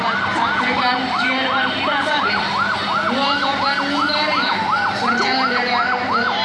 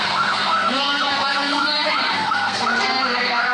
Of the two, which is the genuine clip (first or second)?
first